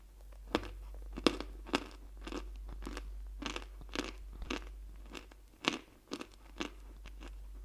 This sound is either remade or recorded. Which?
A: recorded